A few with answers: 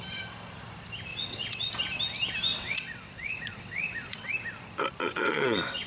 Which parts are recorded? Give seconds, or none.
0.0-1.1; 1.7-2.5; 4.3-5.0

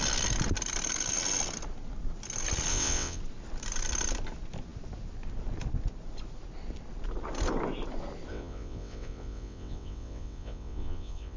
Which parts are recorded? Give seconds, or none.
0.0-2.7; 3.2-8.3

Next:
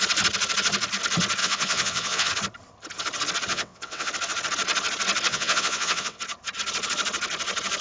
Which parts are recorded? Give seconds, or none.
0.0-1.4; 2.3-3.5; 4.1-5.3; 6.2-7.8

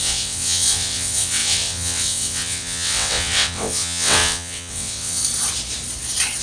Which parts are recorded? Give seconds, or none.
5.2-6.4

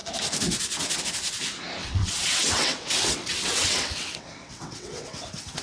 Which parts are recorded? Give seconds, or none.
0.0-1.8

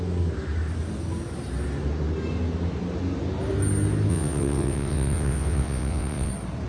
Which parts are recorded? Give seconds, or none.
0.0-4.1; 6.3-6.7

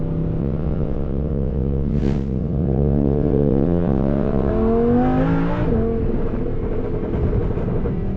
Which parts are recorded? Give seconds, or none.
0.0-0.4; 4.5-8.2

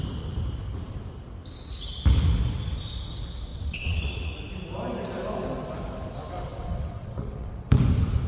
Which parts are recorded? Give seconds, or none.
0.0-3.5; 4.3-6.5; 7.7-8.3